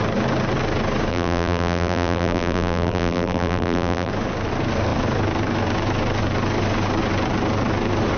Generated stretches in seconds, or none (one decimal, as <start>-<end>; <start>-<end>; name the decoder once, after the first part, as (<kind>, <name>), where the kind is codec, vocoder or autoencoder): 1.1-4.1 (vocoder, BigVGAN v2)